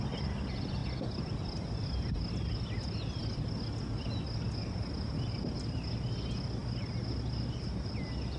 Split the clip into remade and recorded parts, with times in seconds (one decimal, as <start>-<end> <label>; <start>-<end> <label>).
0.0-8.4 recorded